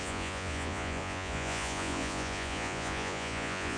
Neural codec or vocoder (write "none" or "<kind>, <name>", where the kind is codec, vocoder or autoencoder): vocoder, Vocos